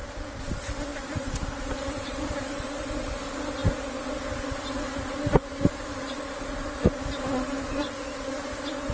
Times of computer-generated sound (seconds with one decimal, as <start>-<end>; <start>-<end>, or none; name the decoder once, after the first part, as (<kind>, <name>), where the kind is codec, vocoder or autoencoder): none